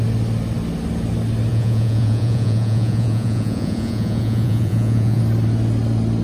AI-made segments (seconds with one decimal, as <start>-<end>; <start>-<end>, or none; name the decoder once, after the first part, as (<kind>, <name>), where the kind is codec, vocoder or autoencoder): 1.5-5.2 (vocoder, Vocos)